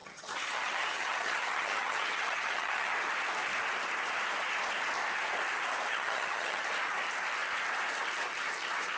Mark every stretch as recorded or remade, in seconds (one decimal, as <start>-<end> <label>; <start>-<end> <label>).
0.0-2.9 remade; 2.9-5.9 recorded; 5.9-6.6 remade; 6.6-9.0 recorded